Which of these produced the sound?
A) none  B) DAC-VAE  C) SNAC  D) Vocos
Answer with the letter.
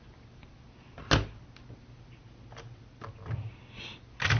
A